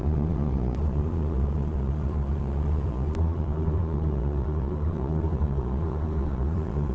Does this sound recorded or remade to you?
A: remade